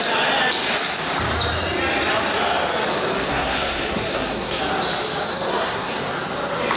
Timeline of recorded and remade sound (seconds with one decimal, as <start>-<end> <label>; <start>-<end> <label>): 0.0-3.3 recorded; 3.3-4.6 remade; 4.6-5.3 recorded; 5.3-6.0 remade; 6.0-6.8 recorded